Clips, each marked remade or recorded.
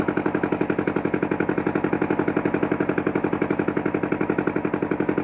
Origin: recorded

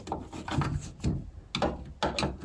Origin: recorded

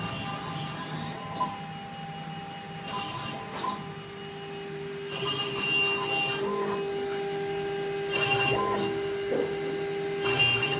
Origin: recorded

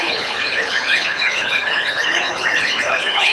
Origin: remade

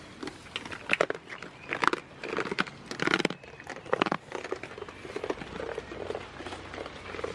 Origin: recorded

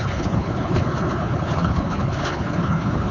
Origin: remade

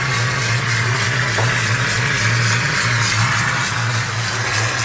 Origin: recorded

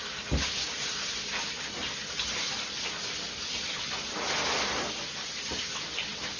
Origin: recorded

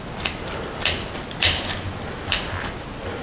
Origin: recorded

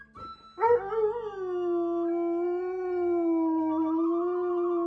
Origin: recorded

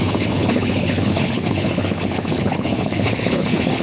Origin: remade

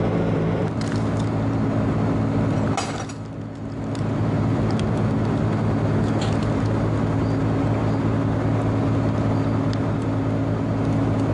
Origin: recorded